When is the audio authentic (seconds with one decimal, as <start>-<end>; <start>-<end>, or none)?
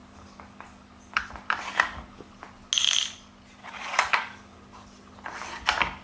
1.2-1.7; 2.3-3.6; 4.6-6.0